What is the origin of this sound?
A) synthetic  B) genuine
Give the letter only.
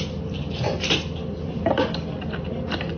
B